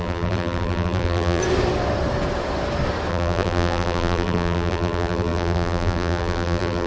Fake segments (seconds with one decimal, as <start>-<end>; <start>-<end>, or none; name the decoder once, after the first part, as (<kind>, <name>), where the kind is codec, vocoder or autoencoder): 0.0-1.4 (vocoder, BigVGAN v2); 3.1-6.9